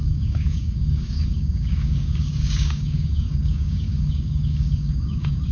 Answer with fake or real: fake